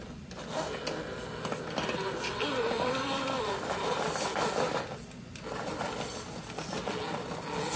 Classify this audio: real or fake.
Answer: real